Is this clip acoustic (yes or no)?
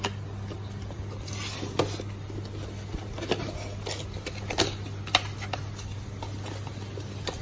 yes